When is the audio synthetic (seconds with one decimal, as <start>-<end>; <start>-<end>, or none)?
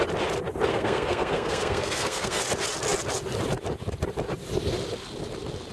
0.7-2.4